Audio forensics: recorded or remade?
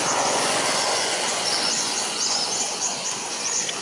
remade